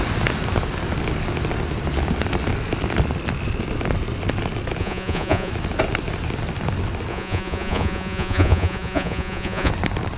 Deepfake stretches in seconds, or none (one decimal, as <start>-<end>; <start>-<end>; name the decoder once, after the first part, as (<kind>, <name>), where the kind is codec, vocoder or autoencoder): 4.8-5.5 (vocoder, Vocos); 7.1-9.7